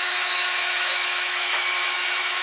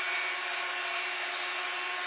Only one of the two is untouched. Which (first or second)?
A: second